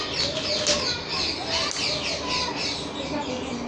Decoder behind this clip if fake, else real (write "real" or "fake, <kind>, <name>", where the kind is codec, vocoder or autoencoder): real